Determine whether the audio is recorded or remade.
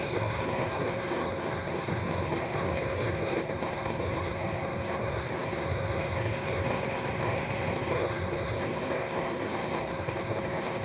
remade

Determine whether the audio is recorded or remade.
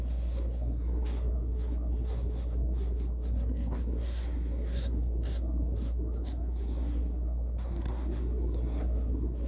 remade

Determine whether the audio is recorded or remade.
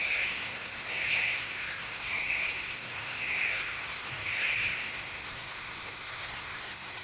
remade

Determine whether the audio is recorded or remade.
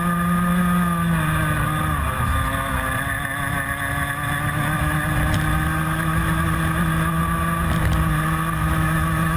recorded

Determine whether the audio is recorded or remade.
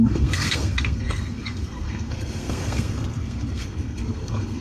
remade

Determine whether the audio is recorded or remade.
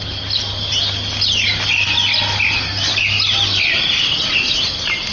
recorded